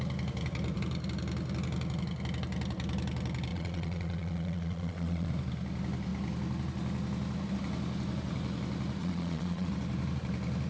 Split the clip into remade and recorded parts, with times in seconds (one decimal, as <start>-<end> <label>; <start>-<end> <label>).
0.0-3.5 recorded; 3.5-5.3 remade; 5.3-9.0 recorded; 9.0-9.7 remade; 9.7-10.7 recorded